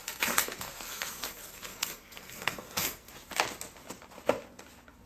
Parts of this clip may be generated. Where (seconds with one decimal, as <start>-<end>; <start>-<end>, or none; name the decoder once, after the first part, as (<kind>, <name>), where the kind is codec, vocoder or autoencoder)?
0.0-3.1 (codec, SNAC)